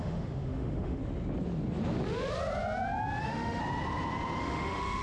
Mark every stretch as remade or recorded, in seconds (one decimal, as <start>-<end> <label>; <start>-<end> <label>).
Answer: 0.0-1.0 remade; 1.0-3.2 recorded; 3.2-3.6 remade; 3.6-4.4 recorded; 4.4-5.0 remade